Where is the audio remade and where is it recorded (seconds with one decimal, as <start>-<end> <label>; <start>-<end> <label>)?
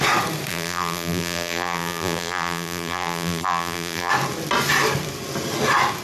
0.0-0.5 recorded; 0.5-4.1 remade; 4.1-6.0 recorded